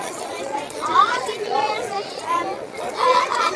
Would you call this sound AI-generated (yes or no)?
yes